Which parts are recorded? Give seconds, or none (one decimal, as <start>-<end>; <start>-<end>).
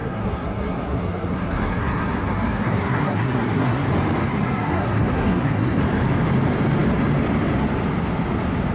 3.9-4.3; 5.8-8.7